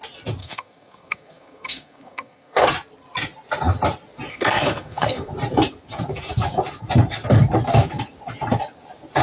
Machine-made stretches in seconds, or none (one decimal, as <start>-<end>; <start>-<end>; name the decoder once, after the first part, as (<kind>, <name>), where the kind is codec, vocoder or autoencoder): 0.4-2.6 (codec, SNAC); 4.3-5.3